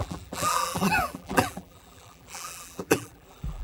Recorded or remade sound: remade